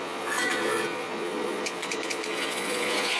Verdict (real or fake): fake